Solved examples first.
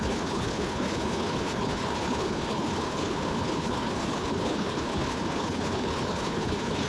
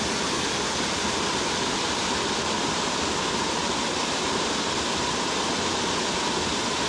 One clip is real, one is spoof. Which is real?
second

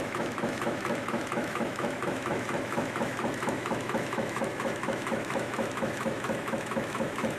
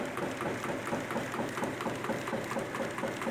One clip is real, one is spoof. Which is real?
second